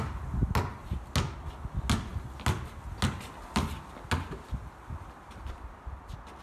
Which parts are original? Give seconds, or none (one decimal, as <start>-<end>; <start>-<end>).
0.0-6.4